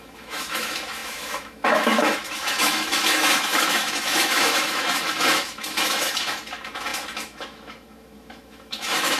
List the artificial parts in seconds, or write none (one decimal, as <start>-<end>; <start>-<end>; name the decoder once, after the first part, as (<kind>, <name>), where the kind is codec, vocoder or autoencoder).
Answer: 0.0-9.2 (autoencoder, DAC-VAE)